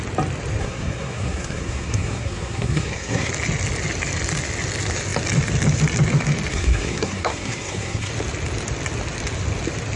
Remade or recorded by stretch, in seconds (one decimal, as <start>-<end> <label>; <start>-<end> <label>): 0.0-0.6 recorded; 0.6-3.3 remade; 3.3-6.5 recorded; 6.5-8.1 remade; 8.1-10.0 recorded